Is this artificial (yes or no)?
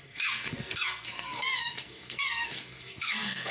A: yes